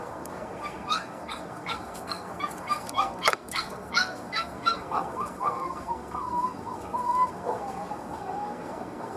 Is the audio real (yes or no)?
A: no